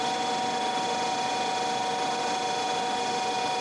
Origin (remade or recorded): recorded